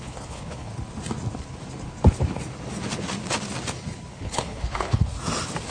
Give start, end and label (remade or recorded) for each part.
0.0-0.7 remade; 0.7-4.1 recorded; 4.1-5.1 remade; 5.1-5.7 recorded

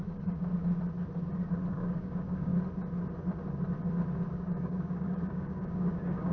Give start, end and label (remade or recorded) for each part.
0.0-0.5 remade; 0.5-1.7 recorded; 1.7-2.5 remade; 2.5-4.3 recorded; 4.3-6.3 remade

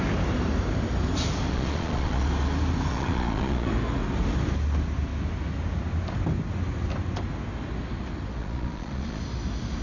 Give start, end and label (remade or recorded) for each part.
0.0-1.5 recorded; 1.5-2.3 remade; 2.3-2.9 recorded; 2.9-3.7 remade; 3.7-8.4 recorded; 8.4-9.2 remade; 9.2-9.8 recorded

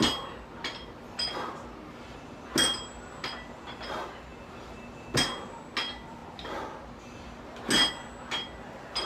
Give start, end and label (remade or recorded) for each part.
0.0-9.1 recorded

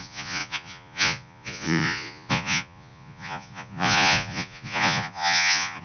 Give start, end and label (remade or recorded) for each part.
0.0-5.8 remade

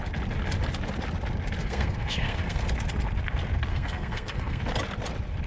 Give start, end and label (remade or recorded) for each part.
0.0-1.6 recorded; 1.6-2.7 remade; 2.7-3.7 recorded; 3.7-4.6 remade; 4.6-5.5 recorded

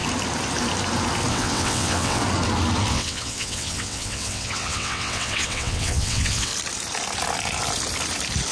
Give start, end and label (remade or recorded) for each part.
0.0-1.3 recorded; 1.3-2.2 remade; 2.2-2.9 recorded; 2.9-6.5 remade; 6.5-8.5 recorded